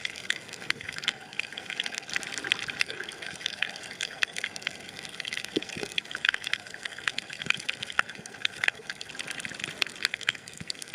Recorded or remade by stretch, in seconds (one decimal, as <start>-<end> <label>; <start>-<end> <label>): 0.0-2.1 remade; 2.1-2.8 recorded; 2.8-9.1 remade; 9.1-10.1 recorded; 10.1-10.9 remade